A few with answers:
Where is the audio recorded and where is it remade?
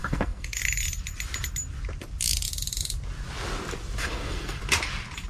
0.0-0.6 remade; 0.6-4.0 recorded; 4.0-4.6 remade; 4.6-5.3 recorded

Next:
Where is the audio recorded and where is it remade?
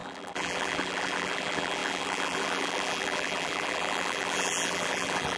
0.0-5.4 remade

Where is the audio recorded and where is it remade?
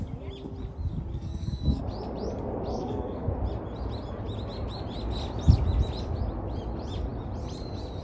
0.0-1.1 recorded; 1.1-1.8 remade; 1.8-2.7 recorded; 2.7-3.3 remade; 3.3-8.0 recorded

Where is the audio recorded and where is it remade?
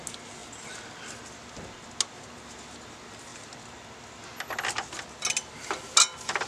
0.0-6.5 recorded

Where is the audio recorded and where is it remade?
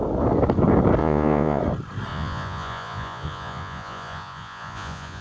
0.0-1.0 recorded; 1.0-1.6 remade; 1.6-2.1 recorded; 2.1-5.2 remade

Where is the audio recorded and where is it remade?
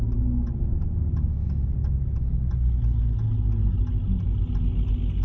0.0-0.7 recorded; 0.7-2.1 remade; 2.1-5.2 recorded